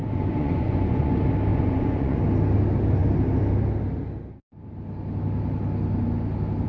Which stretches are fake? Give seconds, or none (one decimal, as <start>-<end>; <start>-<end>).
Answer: 0.0-1.1; 1.5-2.2